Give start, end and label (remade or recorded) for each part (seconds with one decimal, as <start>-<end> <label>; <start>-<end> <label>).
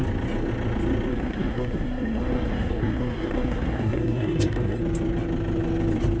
0.0-1.1 recorded; 1.1-4.8 remade; 4.8-6.2 recorded